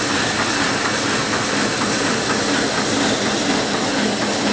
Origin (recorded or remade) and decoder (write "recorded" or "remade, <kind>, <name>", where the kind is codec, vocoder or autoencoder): recorded